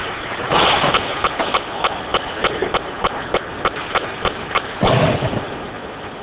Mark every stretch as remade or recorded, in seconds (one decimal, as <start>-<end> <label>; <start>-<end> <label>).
0.0-3.5 recorded; 3.5-5.1 remade; 5.1-6.2 recorded